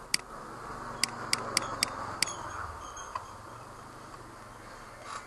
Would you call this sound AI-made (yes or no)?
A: no